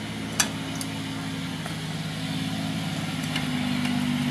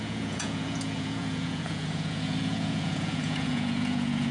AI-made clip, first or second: second